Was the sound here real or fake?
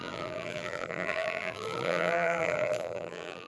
fake